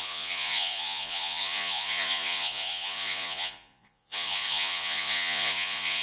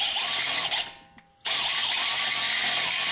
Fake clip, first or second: first